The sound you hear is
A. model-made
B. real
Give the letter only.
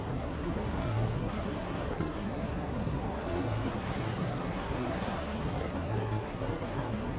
A